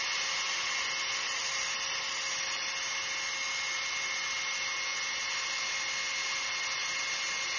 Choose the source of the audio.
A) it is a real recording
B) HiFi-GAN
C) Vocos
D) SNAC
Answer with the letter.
A